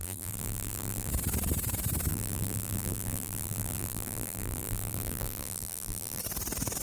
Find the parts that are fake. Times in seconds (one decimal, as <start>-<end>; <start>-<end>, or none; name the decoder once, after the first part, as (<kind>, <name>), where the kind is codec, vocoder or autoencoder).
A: 0.0-1.1 (vocoder, BigVGAN v2); 2.1-6.2